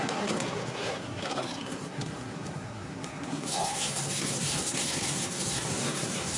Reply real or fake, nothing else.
fake